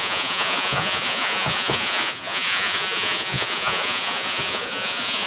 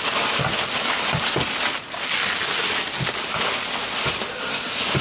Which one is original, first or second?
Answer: second